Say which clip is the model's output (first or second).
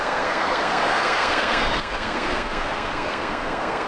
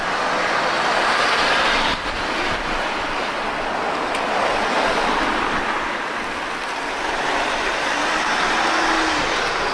first